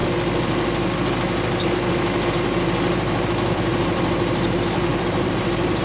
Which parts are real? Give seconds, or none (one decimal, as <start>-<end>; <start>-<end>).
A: 0.0-3.5

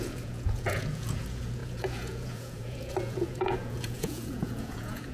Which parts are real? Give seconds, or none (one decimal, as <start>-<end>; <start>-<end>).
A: none

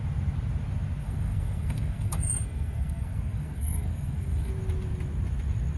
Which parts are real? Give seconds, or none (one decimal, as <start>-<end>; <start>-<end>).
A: 0.0-1.0; 4.5-5.8

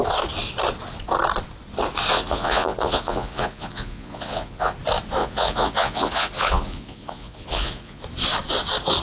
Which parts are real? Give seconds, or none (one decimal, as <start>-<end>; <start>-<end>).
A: 0.0-2.1; 4.7-5.2; 8.0-9.0

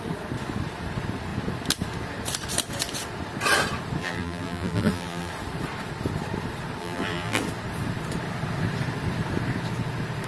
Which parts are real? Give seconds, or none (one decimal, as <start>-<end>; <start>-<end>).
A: 0.0-4.0; 5.3-6.8; 7.4-10.3